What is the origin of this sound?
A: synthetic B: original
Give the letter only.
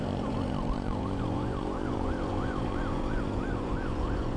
A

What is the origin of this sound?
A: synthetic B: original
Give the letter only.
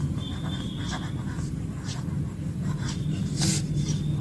B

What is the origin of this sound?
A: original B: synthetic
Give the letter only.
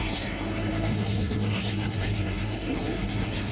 B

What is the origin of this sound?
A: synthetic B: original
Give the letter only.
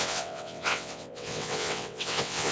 A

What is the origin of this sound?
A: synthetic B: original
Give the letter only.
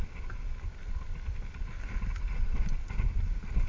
B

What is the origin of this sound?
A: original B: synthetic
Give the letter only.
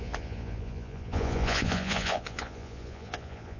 B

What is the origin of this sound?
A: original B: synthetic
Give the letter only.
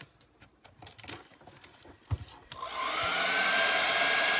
A